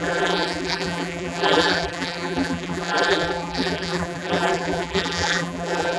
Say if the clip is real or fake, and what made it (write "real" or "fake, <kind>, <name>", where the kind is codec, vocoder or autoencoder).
fake, vocoder, BigVGAN v2